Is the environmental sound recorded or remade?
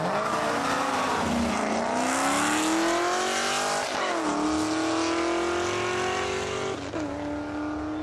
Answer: recorded